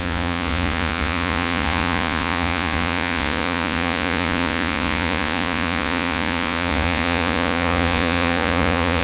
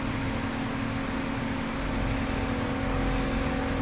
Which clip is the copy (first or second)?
first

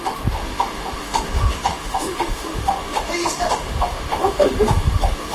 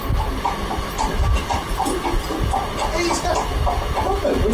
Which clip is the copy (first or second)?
first